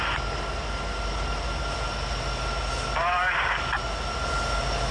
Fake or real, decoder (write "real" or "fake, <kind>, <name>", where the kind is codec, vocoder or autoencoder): real